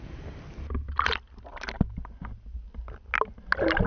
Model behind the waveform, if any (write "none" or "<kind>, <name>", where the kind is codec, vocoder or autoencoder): none